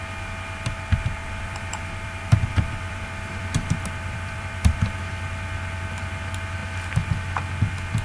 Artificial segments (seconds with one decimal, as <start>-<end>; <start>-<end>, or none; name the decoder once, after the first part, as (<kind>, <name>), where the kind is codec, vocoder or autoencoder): 1.2-5.0 (vocoder, BigVGAN v2)